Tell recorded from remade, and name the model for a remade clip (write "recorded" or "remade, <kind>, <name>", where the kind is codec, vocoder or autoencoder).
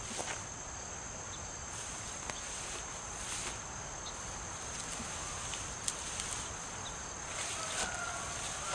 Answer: recorded